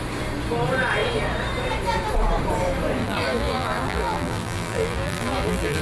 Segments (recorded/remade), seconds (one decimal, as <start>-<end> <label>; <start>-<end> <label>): 0.0-3.0 recorded; 3.0-5.8 remade